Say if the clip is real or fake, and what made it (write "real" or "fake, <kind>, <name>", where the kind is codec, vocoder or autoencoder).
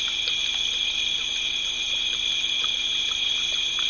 fake, vocoder, BigVGAN v2